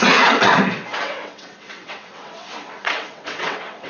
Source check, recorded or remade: remade